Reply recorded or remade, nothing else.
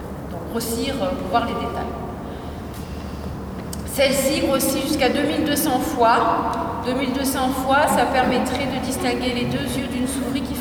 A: recorded